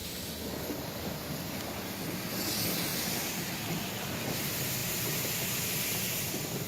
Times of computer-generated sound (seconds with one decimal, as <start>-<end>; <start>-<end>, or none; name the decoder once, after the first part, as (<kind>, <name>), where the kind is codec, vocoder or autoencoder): 2.9-3.5 (vocoder, BigVGAN v2); 4.8-5.3